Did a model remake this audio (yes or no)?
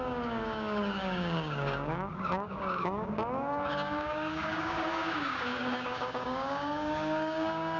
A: yes